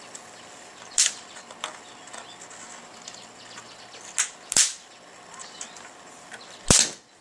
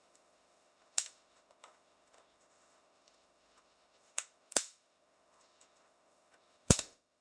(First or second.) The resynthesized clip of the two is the second